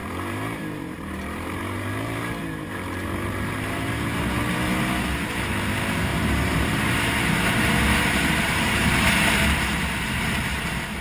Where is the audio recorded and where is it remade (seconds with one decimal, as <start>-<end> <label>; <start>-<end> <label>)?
0.0-4.4 remade; 4.4-6.1 recorded; 6.1-10.0 remade; 10.0-11.0 recorded